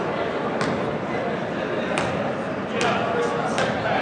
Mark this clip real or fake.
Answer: real